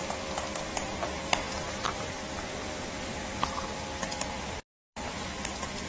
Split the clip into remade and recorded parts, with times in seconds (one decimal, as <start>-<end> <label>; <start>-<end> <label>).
0.0-5.9 remade